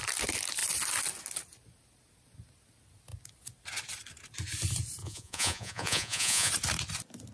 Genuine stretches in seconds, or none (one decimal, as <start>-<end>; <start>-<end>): 0.0-5.0; 6.5-7.3

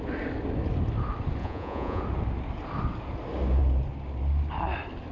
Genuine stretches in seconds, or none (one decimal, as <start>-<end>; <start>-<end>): 0.0-1.4; 2.0-5.1

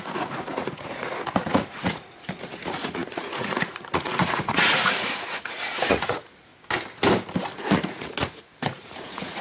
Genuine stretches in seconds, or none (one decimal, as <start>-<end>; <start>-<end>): 6.5-7.6

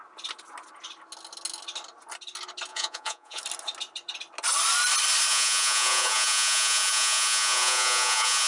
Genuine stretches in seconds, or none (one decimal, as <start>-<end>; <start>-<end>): 0.0-2.7; 3.4-5.3

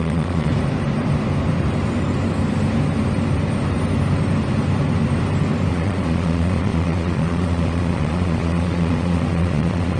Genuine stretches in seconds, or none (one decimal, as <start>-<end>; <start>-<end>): 0.5-5.7

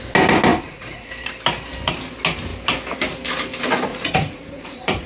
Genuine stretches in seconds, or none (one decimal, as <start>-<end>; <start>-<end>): 0.0-0.5; 1.1-3.9